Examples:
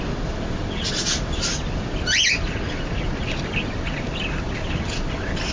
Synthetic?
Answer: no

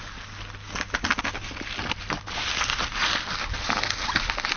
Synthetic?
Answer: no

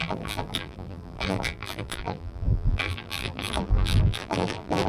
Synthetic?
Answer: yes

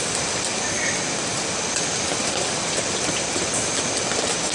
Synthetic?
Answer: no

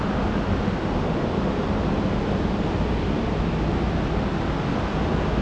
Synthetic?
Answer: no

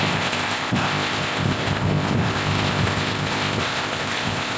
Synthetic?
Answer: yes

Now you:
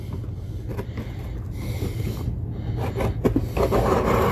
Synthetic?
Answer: no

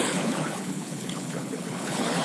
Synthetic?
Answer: yes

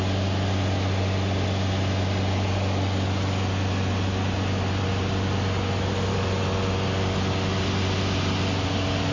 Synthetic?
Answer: no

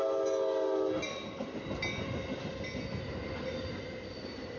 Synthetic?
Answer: no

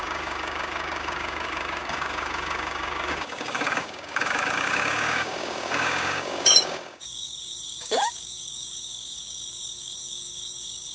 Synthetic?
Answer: yes